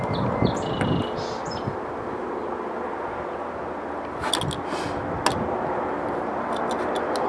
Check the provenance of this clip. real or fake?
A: real